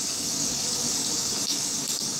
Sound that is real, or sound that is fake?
fake